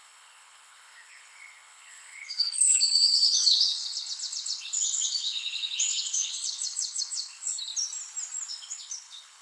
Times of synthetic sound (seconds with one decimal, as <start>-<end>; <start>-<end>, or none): 0.0-7.7; 8.5-9.4

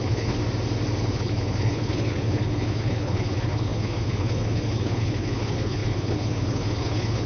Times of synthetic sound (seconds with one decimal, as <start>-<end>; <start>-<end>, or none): 0.0-0.4; 1.0-7.3

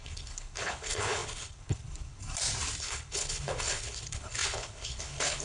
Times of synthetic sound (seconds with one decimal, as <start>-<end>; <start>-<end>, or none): 0.0-2.2; 2.8-5.4

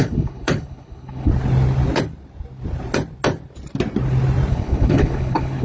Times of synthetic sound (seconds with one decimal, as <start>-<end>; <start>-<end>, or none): 0.0-1.3; 4.5-5.6

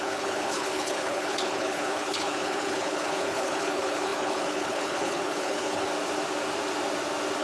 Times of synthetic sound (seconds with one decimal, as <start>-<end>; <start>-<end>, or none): 0.0-5.9

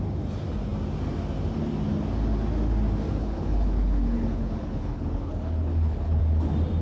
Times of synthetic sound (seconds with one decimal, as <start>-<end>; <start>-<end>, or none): 3.2-6.2

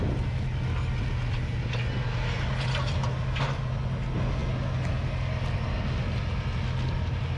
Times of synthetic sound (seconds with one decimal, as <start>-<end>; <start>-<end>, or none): none